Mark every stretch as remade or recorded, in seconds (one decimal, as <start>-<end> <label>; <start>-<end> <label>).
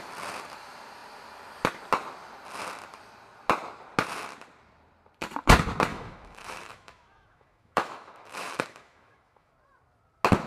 0.0-5.9 recorded; 5.9-9.5 remade; 9.5-10.5 recorded